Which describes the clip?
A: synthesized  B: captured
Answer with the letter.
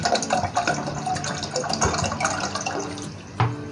B